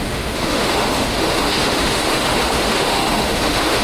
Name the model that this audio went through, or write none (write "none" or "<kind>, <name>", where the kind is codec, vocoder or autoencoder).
autoencoder, DAC-VAE